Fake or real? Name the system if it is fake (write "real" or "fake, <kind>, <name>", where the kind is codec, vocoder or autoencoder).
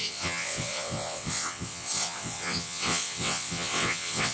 fake, vocoder, WaveNeXt